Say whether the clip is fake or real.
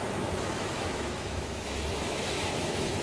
fake